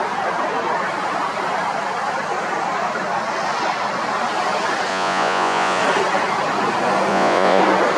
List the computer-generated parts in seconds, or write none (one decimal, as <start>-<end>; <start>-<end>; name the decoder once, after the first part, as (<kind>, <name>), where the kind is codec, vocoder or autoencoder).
4.9-5.8 (vocoder, Vocos); 7.1-7.6